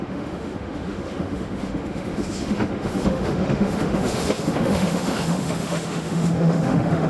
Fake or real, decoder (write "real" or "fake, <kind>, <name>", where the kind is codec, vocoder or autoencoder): fake, autoencoder, DAC-VAE